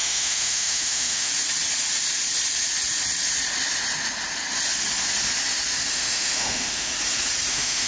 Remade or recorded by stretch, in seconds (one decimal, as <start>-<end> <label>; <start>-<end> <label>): 0.0-1.3 remade; 1.3-5.9 recorded; 5.9-6.9 remade; 6.9-7.5 recorded; 7.5-7.9 remade